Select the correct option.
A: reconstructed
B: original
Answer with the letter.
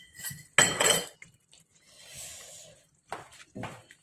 B